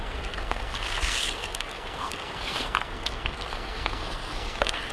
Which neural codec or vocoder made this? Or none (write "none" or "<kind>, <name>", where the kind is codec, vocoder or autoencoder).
codec, SNAC